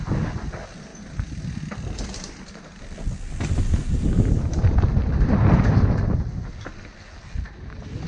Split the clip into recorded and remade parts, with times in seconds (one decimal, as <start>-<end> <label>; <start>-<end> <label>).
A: 0.0-8.1 recorded